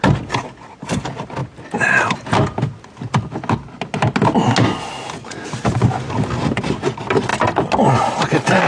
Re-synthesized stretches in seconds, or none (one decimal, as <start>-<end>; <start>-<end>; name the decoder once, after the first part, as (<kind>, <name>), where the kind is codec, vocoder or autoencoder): none